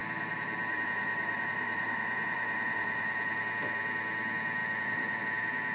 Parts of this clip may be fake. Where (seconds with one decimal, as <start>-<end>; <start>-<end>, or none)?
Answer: 0.0-3.4; 4.6-5.2